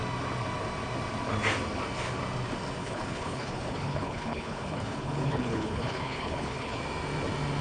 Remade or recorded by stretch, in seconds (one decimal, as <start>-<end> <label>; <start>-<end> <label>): 0.0-2.8 recorded; 2.8-6.8 remade; 6.8-7.6 recorded